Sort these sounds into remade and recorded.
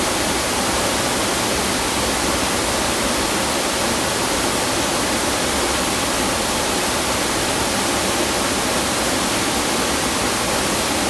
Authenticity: recorded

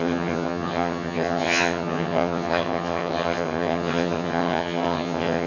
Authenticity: remade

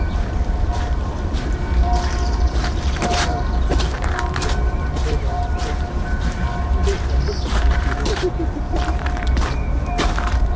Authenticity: remade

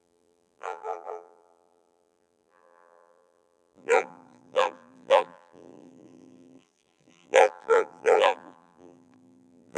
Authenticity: remade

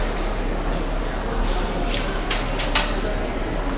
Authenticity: recorded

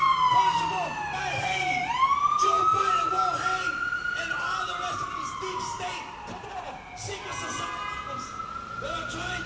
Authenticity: recorded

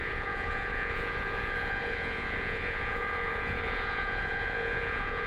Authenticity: remade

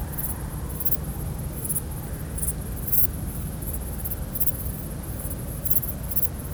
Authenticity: recorded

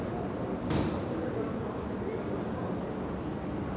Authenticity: recorded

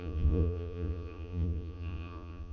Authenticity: remade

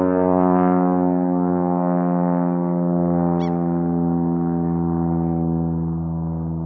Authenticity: recorded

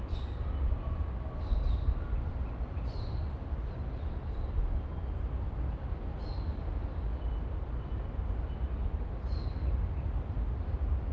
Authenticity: recorded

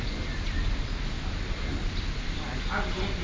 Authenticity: recorded